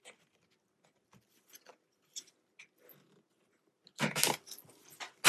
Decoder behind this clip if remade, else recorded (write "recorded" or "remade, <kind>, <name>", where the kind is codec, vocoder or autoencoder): recorded